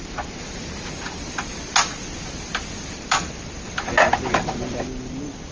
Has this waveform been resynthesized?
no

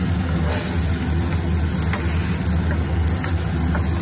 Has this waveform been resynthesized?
no